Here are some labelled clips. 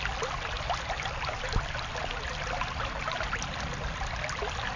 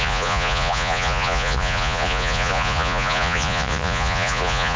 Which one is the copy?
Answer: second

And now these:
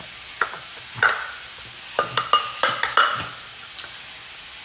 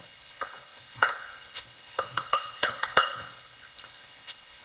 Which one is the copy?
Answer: second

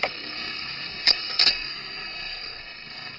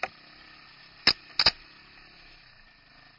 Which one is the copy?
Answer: first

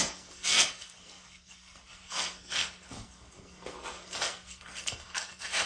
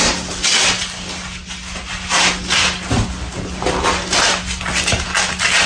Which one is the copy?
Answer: first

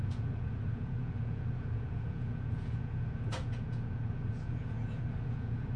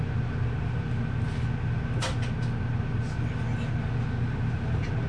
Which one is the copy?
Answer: first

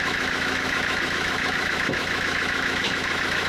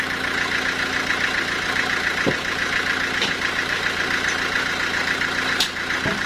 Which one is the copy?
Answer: first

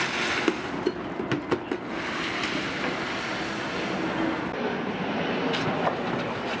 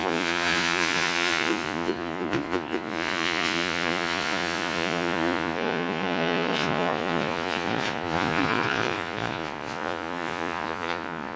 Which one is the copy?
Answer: second